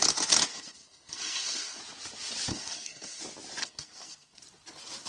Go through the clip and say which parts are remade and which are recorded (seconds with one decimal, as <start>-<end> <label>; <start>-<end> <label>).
0.0-0.5 recorded; 0.5-1.8 remade; 1.8-2.5 recorded; 2.5-3.2 remade; 3.2-3.6 recorded; 3.6-4.4 remade; 4.4-5.1 recorded